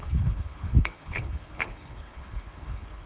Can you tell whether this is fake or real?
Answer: fake